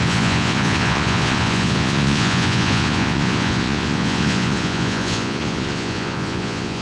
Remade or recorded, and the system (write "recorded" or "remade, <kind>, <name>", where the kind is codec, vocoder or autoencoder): remade, vocoder, Vocos